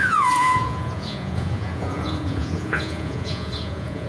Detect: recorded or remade remade